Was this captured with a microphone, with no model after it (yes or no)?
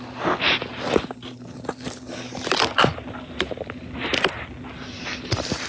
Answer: yes